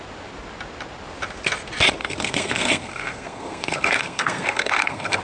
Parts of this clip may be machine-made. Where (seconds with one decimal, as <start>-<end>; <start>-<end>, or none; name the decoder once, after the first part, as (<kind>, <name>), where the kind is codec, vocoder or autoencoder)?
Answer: 2.0-5.2 (codec, SNAC)

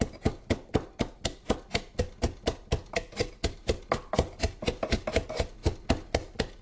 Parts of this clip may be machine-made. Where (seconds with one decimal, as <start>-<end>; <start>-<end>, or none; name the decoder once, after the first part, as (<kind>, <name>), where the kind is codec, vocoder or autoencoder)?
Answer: none

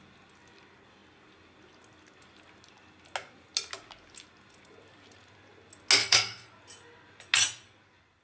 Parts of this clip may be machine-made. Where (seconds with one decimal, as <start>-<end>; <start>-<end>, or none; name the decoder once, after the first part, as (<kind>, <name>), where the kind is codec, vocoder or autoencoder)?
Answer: 6.0-6.5 (codec, SNAC)

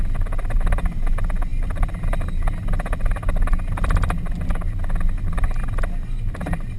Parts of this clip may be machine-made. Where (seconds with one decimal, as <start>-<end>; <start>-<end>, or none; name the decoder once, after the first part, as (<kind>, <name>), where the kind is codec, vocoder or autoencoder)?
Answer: none

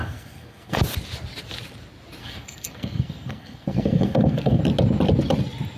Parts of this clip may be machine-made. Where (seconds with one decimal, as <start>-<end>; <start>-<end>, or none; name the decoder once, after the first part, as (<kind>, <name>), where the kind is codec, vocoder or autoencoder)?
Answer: 0.0-0.8 (codec, SNAC); 2.2-4.6